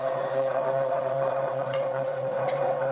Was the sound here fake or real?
fake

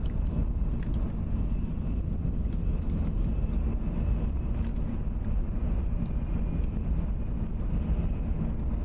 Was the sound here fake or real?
real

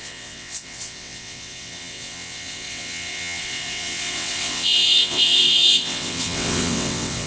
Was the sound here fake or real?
fake